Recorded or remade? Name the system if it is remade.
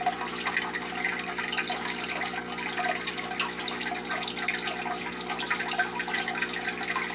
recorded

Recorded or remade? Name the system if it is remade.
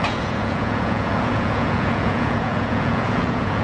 remade, vocoder, Vocos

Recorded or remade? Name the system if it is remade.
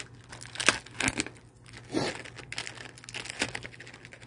recorded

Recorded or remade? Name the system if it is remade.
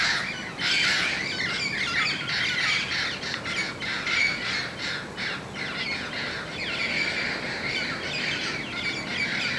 recorded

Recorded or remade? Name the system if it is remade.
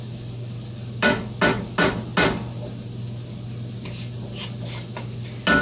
recorded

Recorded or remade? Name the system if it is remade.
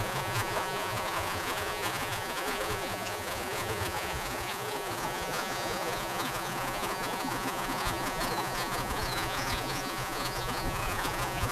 remade, vocoder, Vocos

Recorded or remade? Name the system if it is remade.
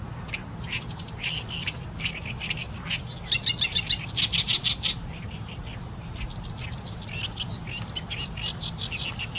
recorded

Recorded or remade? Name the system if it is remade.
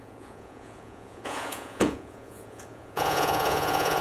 remade, vocoder, Vocos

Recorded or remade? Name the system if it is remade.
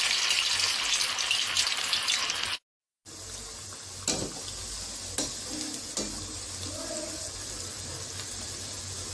recorded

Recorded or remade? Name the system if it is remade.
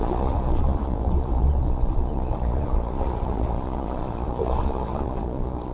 remade, vocoder, Vocos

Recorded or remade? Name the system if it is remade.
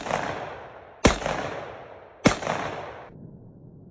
recorded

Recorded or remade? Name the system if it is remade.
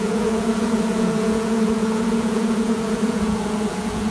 remade, vocoder, Vocos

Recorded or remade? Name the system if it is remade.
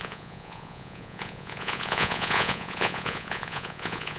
remade, vocoder, Vocos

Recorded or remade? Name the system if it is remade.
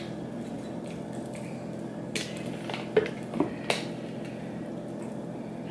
recorded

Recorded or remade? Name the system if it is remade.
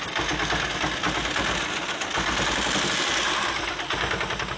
recorded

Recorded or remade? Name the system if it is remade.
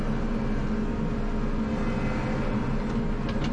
recorded